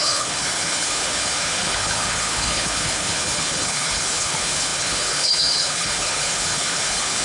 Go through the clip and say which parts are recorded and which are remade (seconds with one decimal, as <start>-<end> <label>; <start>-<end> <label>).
0.0-7.2 remade

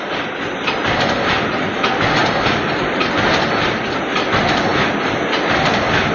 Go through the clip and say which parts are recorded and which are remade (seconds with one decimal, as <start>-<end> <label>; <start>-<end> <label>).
0.0-6.1 recorded

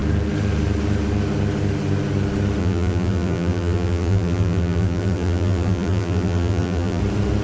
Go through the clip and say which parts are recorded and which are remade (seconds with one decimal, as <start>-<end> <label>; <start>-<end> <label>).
0.0-2.6 recorded; 2.6-7.0 remade; 7.0-7.4 recorded

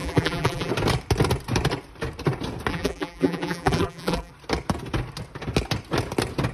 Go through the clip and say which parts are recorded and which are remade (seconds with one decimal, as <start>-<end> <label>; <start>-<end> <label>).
0.0-0.7 remade; 0.7-2.7 recorded; 2.7-4.3 remade; 4.3-6.5 recorded

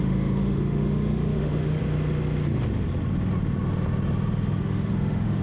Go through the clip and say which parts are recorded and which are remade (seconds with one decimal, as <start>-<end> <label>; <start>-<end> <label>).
0.0-1.8 remade; 1.8-4.6 recorded; 4.6-5.4 remade

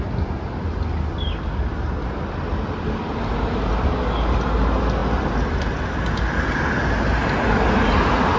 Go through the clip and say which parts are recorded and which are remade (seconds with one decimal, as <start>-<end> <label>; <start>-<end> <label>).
0.0-8.4 recorded

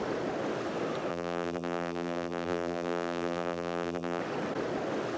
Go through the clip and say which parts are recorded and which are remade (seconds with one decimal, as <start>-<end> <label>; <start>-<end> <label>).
0.0-1.1 recorded; 1.1-4.2 remade; 4.2-5.2 recorded

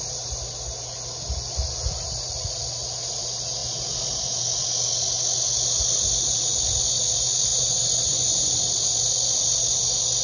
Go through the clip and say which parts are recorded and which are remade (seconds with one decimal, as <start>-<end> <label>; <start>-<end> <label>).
0.0-7.5 recorded; 7.5-8.6 remade; 8.6-10.2 recorded